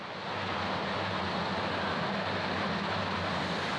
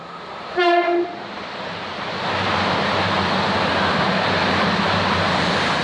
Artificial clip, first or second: second